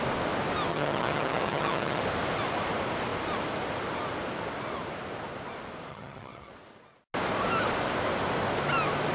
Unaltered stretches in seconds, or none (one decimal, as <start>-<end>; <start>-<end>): 0.0-0.7; 2.0-5.9; 6.5-9.1